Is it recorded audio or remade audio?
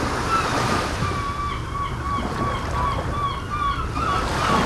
recorded